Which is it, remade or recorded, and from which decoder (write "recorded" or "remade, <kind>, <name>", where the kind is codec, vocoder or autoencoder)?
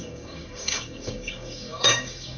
remade, codec, DAC